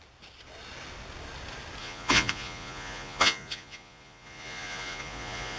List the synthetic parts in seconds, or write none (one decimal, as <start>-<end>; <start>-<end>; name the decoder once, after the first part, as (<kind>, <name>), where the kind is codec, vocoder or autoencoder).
1.8-5.6 (vocoder, Vocos)